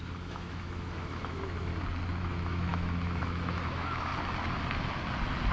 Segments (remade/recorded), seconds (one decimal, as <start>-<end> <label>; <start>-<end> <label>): 0.0-1.7 remade; 1.7-2.2 recorded; 2.2-4.1 remade; 4.1-5.5 recorded